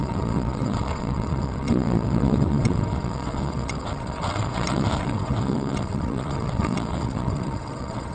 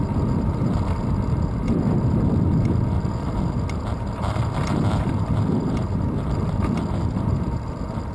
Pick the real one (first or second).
second